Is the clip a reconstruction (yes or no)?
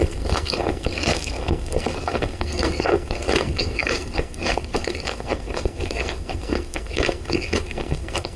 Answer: yes